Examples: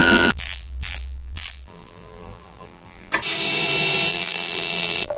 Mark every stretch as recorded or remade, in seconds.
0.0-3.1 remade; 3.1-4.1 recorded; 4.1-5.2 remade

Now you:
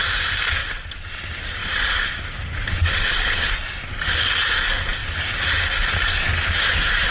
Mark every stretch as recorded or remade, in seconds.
0.0-0.6 recorded; 0.6-1.1 remade; 1.1-1.6 recorded; 1.6-2.3 remade; 2.3-5.0 recorded; 5.0-5.9 remade; 5.9-7.1 recorded

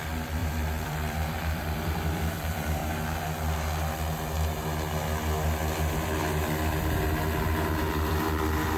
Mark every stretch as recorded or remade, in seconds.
0.0-2.8 remade; 2.8-7.9 recorded; 7.9-8.8 remade

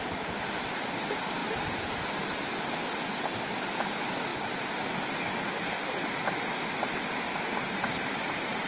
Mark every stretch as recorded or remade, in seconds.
0.0-8.7 recorded

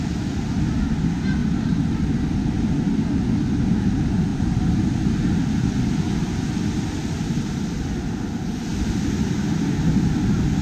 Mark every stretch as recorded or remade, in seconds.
0.0-1.4 recorded; 1.4-3.1 remade; 3.1-4.3 recorded; 4.3-6.0 remade; 6.0-10.6 recorded

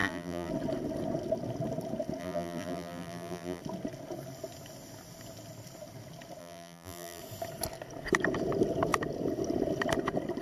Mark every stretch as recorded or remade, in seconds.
0.0-0.5 remade; 0.5-2.2 recorded; 2.2-3.6 remade; 3.6-6.4 recorded; 6.4-7.2 remade; 7.2-10.4 recorded

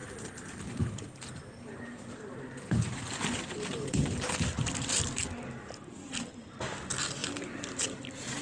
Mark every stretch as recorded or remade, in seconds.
0.0-8.4 recorded

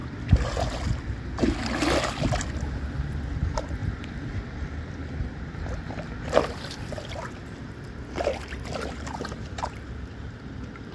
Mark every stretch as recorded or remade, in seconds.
0.0-2.9 recorded; 2.9-10.9 remade